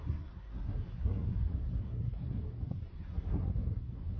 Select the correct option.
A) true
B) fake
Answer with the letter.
B